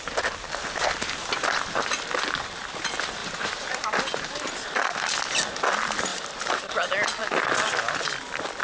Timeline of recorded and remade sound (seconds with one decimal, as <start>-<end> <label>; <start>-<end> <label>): 0.0-3.2 recorded; 3.2-5.0 remade; 5.0-6.1 recorded; 6.1-6.7 remade; 6.7-8.6 recorded